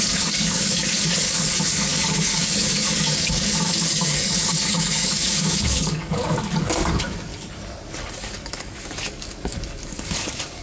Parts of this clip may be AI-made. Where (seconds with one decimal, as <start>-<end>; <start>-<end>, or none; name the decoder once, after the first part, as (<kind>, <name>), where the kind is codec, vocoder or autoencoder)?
0.0-7.3 (codec, DAC); 8.1-10.6